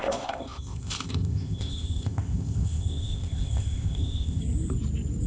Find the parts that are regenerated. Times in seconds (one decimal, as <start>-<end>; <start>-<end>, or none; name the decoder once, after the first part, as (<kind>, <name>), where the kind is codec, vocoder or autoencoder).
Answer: 0.0-4.4 (codec, ZipCodec)